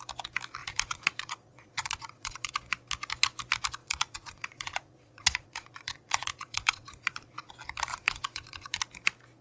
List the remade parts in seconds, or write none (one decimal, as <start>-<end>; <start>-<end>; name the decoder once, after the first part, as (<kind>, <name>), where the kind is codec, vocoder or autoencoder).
0.6-2.5 (vocoder, Vocos); 3.8-7.5; 7.9-8.8